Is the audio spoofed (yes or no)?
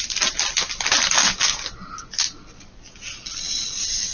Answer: no